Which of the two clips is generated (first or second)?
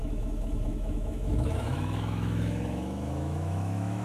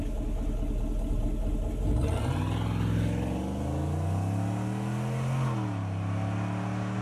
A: first